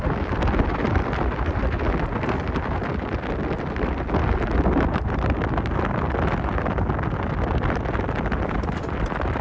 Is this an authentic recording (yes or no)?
yes